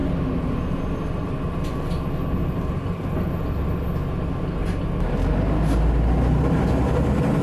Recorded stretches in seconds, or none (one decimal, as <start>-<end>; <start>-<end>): 0.0-7.4